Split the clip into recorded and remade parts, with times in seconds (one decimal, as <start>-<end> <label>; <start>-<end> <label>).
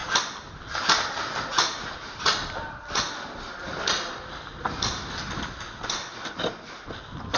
0.0-7.4 recorded